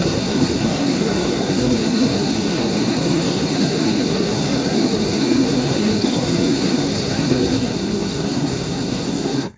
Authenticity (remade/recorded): remade